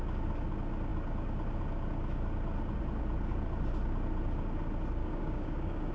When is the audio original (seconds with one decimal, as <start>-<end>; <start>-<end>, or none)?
0.0-5.0